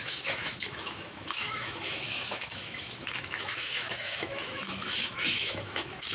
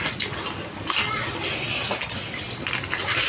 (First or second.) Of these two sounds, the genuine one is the second